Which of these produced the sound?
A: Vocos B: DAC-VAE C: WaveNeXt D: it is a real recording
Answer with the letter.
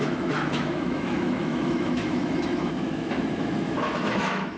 B